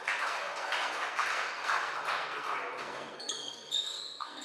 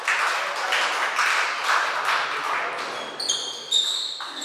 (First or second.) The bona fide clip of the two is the second